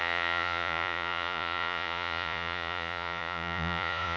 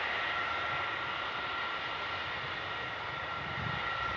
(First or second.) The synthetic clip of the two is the first